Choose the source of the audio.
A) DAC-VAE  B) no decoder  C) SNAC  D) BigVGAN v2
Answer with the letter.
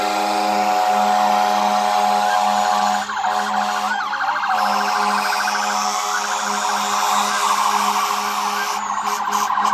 B